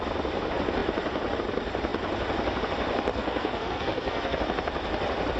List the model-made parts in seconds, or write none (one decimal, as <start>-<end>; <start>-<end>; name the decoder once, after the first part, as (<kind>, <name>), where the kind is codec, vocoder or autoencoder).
3.1-4.4 (codec, SNAC)